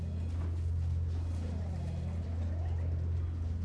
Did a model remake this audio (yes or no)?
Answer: no